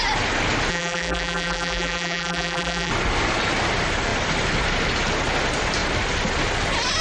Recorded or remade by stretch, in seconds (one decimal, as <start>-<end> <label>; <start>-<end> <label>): 0.0-0.7 recorded; 0.7-2.9 remade; 2.9-7.0 recorded